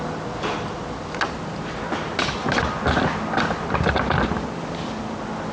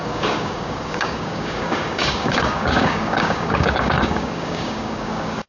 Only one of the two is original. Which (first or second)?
first